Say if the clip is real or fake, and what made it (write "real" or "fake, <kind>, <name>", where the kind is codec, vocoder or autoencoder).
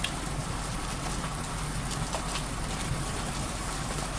real